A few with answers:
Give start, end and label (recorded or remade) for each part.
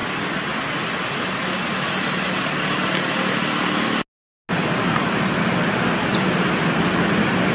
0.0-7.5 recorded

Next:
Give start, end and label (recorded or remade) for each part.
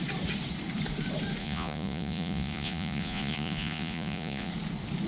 0.0-1.4 recorded; 1.4-4.5 remade; 4.5-5.1 recorded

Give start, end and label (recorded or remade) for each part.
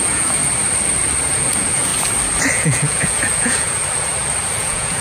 0.0-0.4 remade; 0.4-1.3 recorded; 1.3-1.9 remade; 1.9-2.5 recorded; 2.5-3.8 remade; 3.8-4.6 recorded; 4.6-5.0 remade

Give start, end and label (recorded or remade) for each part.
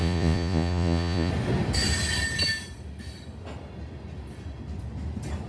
0.0-1.3 remade; 1.3-5.5 recorded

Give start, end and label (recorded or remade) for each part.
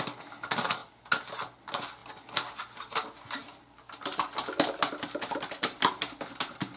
0.0-6.8 recorded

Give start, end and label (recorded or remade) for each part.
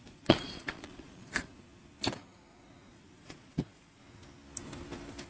0.0-1.5 remade; 1.5-2.9 recorded; 2.9-4.0 remade; 4.0-5.3 recorded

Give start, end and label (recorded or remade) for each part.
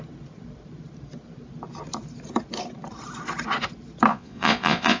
0.0-4.1 recorded; 4.1-5.0 remade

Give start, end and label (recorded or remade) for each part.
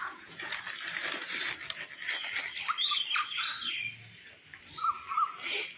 0.0-0.5 remade; 0.5-5.8 recorded